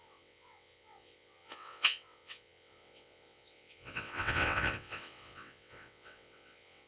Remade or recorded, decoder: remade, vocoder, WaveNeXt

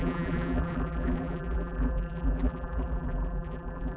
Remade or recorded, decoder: remade, vocoder, BigVGAN v2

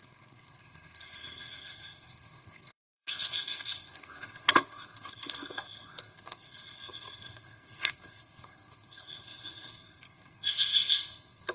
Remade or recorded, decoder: remade, codec, SNAC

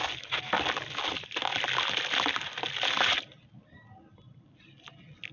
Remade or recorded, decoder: recorded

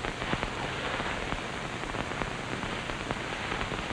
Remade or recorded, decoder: recorded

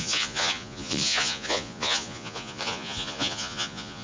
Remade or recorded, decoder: remade, vocoder, Vocos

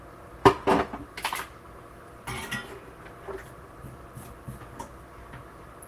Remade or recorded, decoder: remade, vocoder, BigVGAN v2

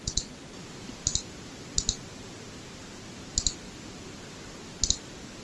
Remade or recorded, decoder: recorded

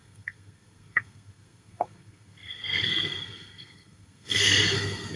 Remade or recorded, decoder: remade, codec, SNAC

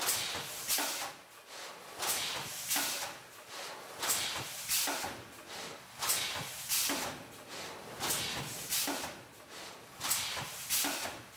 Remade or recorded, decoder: recorded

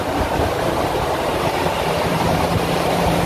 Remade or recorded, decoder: remade, vocoder, BigVGAN v2